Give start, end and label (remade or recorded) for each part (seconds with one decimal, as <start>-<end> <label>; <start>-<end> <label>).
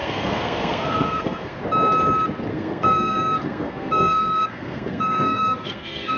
0.0-1.6 remade; 1.6-2.5 recorded; 2.5-6.2 remade